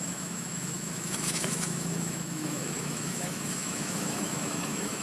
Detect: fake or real fake